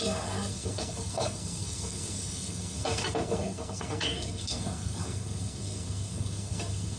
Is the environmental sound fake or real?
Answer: fake